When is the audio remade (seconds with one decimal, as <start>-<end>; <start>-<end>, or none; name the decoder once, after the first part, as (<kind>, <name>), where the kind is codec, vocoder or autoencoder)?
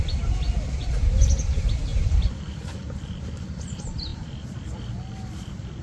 1.9-2.5 (vocoder, BigVGAN v2)